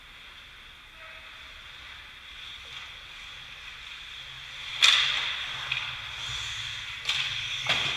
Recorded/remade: recorded